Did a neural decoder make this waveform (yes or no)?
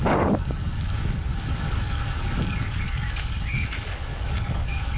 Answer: yes